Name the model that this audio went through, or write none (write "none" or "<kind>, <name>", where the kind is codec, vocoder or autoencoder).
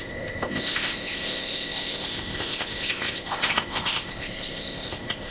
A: codec, ZipCodec